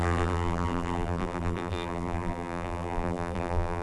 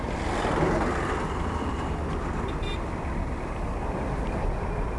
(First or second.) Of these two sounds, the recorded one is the second